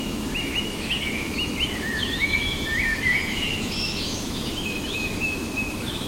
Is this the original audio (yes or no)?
no